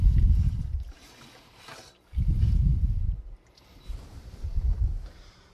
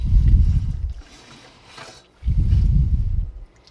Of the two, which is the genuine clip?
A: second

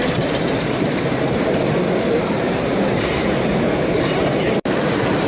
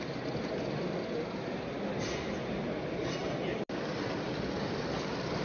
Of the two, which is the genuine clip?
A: second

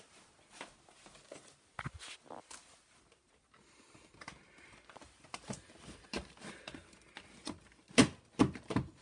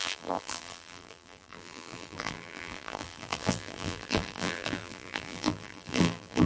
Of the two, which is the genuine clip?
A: first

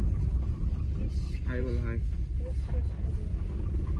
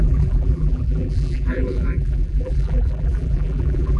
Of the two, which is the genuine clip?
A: first